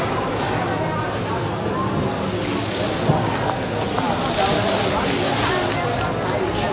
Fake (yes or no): no